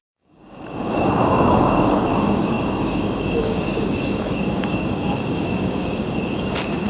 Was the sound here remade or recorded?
remade